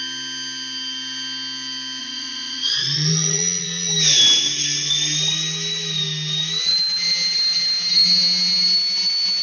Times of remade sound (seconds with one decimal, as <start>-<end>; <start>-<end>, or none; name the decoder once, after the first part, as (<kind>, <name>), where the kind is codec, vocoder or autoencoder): 2.0-3.9 (vocoder, Vocos)